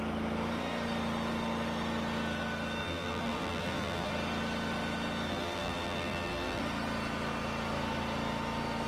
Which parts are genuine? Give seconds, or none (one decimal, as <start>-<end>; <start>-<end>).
0.0-2.8; 4.1-5.3; 6.6-8.9